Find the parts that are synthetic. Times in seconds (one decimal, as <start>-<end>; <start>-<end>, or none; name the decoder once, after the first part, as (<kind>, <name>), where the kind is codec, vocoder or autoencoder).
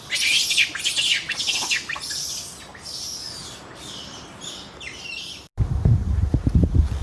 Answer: none